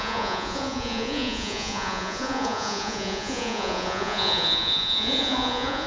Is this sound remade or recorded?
remade